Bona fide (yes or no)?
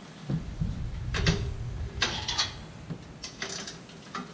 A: yes